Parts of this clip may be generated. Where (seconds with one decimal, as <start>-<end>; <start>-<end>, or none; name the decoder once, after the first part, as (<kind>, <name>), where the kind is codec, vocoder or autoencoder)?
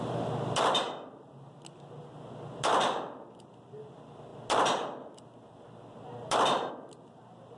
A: none